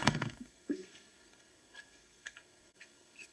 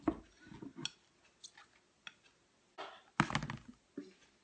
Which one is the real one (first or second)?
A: second